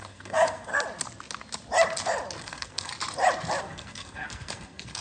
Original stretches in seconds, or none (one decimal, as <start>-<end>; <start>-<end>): 0.7-2.4; 2.9-3.6